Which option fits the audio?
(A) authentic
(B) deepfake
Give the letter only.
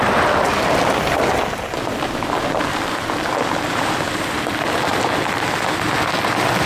A